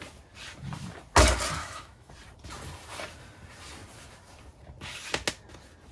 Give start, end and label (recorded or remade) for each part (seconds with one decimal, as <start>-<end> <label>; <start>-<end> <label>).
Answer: 0.0-1.6 recorded; 1.6-2.1 remade; 2.1-5.9 recorded

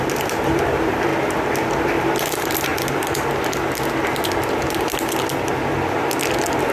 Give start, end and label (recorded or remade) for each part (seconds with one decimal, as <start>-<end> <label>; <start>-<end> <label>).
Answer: 0.0-1.1 remade; 1.1-1.8 recorded; 1.8-2.7 remade; 2.7-6.7 recorded

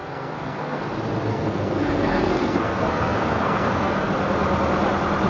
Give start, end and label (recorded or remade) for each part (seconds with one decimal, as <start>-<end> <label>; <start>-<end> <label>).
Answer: 0.0-0.8 remade; 0.8-1.3 recorded; 1.3-4.1 remade; 4.1-5.3 recorded

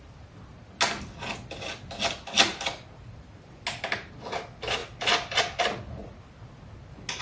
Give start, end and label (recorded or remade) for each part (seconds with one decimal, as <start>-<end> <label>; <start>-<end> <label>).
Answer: 0.0-7.2 recorded

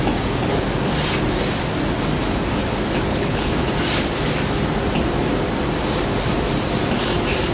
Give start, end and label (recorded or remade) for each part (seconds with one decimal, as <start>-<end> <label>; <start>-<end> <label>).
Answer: 0.0-3.1 recorded; 3.1-3.7 remade; 3.7-7.5 recorded